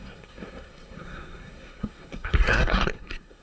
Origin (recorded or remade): remade